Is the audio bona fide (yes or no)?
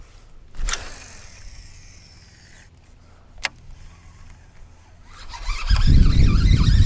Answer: yes